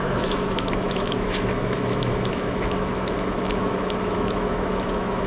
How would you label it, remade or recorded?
remade